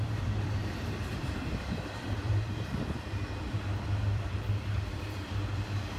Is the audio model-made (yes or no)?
yes